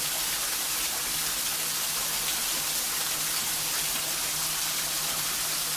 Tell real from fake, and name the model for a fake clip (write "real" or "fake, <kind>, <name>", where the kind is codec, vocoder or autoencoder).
real